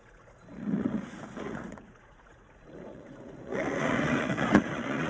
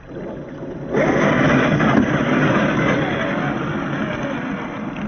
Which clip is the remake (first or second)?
first